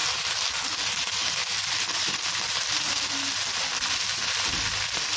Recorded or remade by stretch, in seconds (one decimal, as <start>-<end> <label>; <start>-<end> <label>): 0.0-5.2 recorded